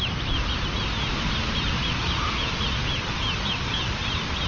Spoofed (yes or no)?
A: no